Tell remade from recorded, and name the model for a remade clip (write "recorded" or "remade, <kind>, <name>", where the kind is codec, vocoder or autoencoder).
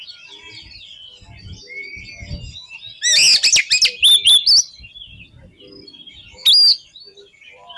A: recorded